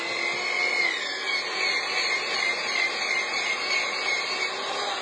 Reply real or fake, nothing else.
real